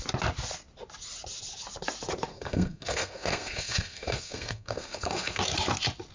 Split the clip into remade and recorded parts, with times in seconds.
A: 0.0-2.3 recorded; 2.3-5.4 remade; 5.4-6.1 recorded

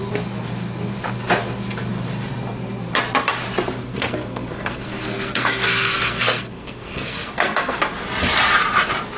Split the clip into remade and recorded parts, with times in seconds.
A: 0.0-3.8 recorded; 3.8-7.8 remade; 7.8-9.2 recorded

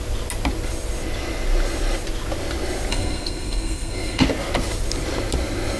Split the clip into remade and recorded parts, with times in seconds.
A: 0.0-2.9 recorded; 2.9-4.2 remade; 4.2-5.8 recorded